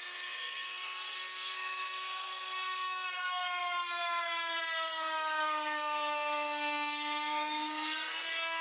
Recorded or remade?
remade